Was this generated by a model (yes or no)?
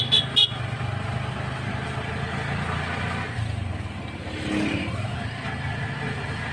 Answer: no